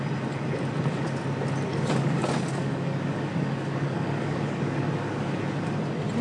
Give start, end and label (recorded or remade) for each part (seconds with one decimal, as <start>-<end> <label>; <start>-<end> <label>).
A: 0.0-1.7 recorded; 1.7-5.4 remade; 5.4-6.2 recorded